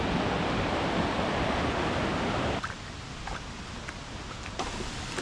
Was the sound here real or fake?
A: real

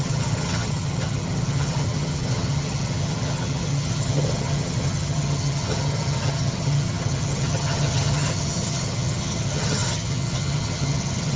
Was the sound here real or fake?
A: fake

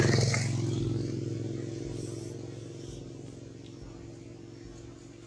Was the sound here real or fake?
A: real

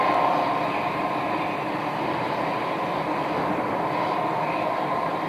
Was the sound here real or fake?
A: real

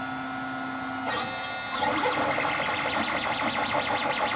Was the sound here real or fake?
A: real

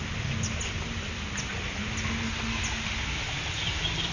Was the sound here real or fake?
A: real